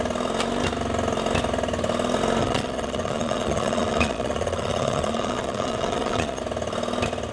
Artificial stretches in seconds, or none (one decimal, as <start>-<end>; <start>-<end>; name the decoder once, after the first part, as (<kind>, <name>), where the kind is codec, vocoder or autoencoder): 2.4-6.4 (vocoder, Vocos)